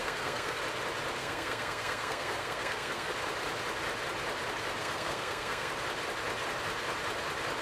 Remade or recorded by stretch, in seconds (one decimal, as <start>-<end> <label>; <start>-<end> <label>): 0.0-0.6 remade; 0.6-1.2 recorded; 1.2-3.1 remade; 3.1-4.8 recorded; 4.8-5.7 remade; 5.7-7.6 recorded